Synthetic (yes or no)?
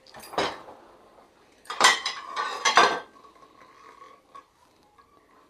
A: yes